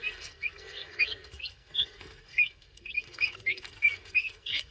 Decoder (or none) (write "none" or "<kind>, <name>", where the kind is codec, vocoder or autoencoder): codec, SNAC